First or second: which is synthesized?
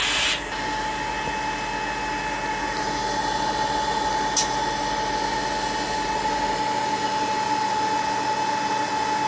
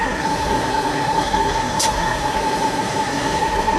second